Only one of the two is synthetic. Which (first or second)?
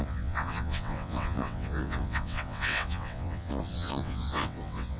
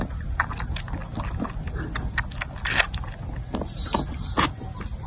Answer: first